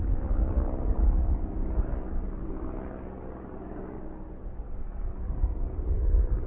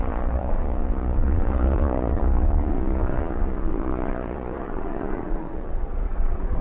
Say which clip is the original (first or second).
first